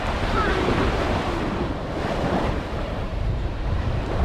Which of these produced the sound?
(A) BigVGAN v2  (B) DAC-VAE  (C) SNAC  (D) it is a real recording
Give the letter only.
A